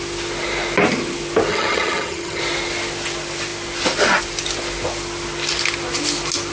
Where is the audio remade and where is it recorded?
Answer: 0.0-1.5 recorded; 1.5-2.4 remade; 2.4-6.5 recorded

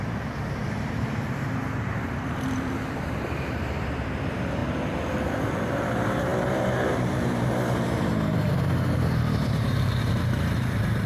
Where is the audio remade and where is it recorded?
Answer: 0.0-1.6 remade; 1.6-2.3 recorded; 2.3-11.1 remade